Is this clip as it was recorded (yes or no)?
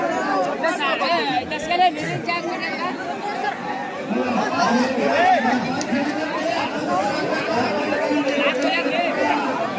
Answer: yes